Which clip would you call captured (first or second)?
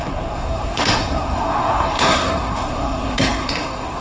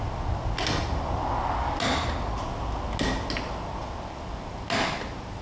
second